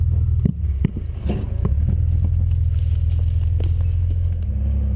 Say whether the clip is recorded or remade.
recorded